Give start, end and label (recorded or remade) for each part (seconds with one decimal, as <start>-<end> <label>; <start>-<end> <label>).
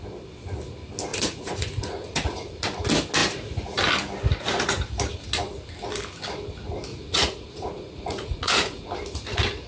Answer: 0.0-1.1 recorded; 1.1-2.5 remade; 2.5-6.9 recorded; 6.9-8.9 remade; 8.9-9.7 recorded